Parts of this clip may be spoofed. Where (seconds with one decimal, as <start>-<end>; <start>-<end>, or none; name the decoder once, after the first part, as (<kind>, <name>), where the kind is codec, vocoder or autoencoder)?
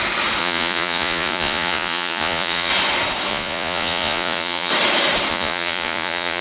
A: 0.4-2.7 (vocoder, Vocos); 3.3-4.7; 5.3-6.4